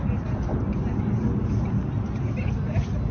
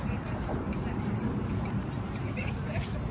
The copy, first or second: second